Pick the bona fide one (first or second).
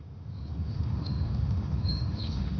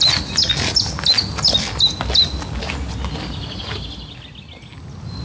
second